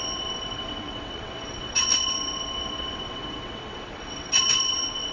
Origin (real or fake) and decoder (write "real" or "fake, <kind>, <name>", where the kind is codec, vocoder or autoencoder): fake, vocoder, WaveNeXt